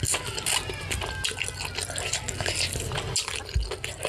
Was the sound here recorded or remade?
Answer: recorded